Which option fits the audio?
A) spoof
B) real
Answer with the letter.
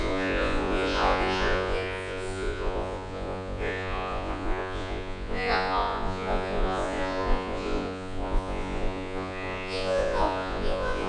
A